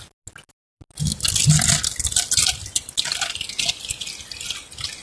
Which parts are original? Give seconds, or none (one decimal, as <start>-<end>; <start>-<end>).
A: 0.0-5.0